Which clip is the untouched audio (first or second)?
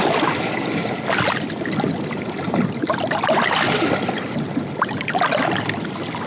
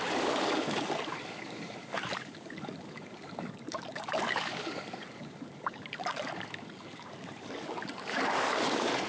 first